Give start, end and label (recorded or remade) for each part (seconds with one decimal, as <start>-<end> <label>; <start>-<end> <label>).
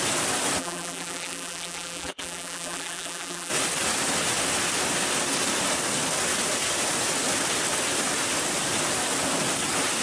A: 0.0-0.6 recorded; 0.6-3.5 remade; 3.5-10.0 recorded